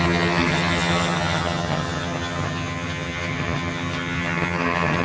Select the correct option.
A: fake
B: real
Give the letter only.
A